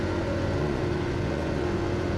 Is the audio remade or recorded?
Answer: remade